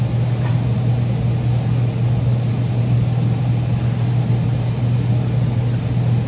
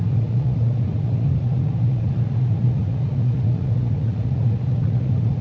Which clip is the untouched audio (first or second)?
first